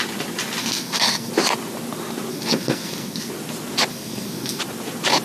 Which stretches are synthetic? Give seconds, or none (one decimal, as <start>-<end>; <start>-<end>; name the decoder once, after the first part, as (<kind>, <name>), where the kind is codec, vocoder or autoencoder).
0.6-1.3 (codec, SNAC); 2.3-3.3; 3.9-4.6